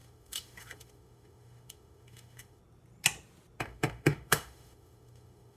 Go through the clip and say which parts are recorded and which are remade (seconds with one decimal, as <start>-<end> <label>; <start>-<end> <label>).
0.0-2.6 remade; 2.6-3.6 recorded; 3.6-5.6 remade